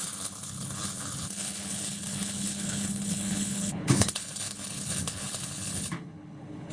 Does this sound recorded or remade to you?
remade